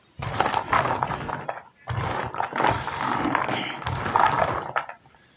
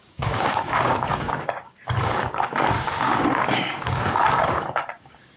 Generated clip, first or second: second